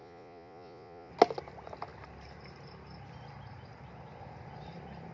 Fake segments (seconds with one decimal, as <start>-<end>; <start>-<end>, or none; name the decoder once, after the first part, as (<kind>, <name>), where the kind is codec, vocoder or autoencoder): 0.0-1.1 (vocoder, Vocos)